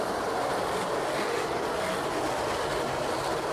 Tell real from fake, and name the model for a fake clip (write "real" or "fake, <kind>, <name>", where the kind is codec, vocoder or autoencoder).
real